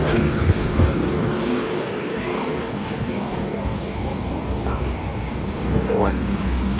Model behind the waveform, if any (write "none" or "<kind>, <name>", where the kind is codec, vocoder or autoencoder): codec, DAC